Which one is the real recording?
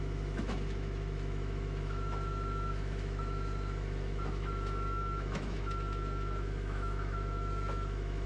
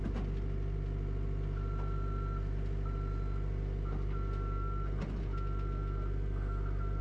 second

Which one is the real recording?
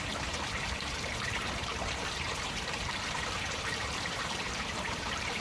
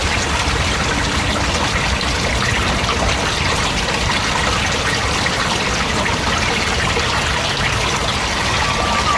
second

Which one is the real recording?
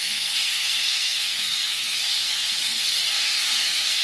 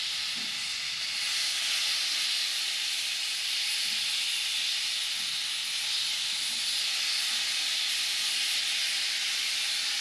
second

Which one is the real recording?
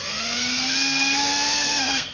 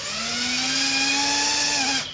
second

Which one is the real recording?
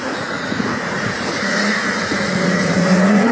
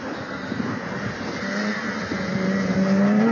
second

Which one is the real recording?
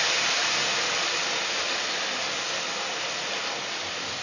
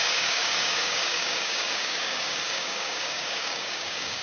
first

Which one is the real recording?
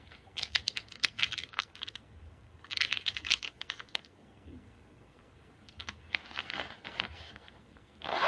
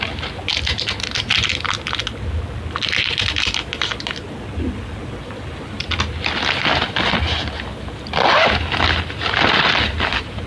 second